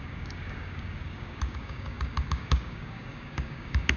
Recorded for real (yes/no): no